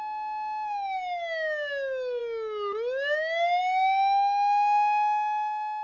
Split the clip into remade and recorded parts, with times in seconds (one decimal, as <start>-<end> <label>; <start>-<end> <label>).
0.0-5.8 recorded